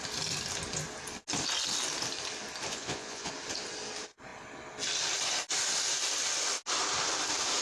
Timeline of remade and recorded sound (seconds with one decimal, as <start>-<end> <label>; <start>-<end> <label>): 0.0-2.7 recorded; 2.7-3.3 remade; 3.3-7.6 recorded